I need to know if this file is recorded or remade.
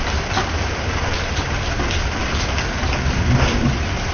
recorded